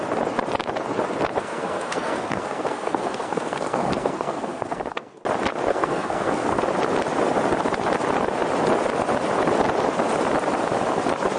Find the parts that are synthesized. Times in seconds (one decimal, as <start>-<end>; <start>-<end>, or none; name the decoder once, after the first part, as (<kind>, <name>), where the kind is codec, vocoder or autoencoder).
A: 1.4-5.2 (codec, SNAC); 5.7-6.6